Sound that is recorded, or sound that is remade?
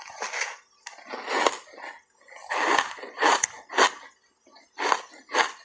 recorded